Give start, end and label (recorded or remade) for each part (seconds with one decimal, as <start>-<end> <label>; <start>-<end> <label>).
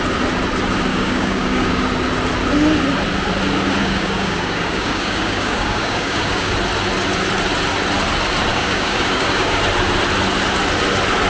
0.0-0.9 recorded; 0.9-1.8 remade; 1.8-3.8 recorded; 3.8-6.5 remade; 6.5-8.5 recorded; 8.5-9.6 remade; 9.6-11.3 recorded